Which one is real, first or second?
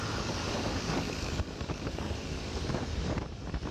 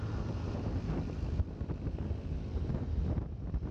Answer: second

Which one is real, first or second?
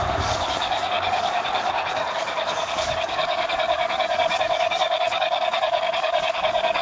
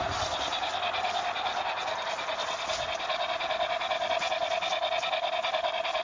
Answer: second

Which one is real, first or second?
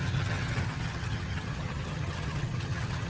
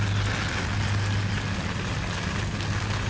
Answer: second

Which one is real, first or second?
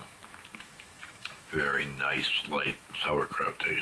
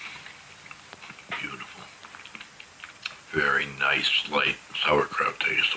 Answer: second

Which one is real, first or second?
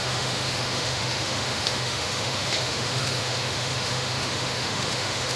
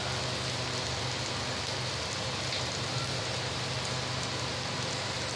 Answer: second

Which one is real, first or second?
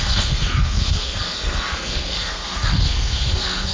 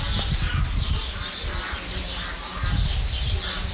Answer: second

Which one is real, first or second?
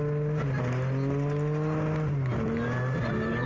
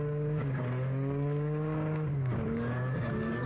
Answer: first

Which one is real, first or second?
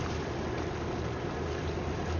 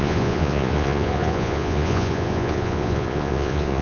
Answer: first